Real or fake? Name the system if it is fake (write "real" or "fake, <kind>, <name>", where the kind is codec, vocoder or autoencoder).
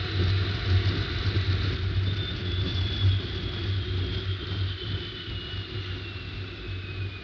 real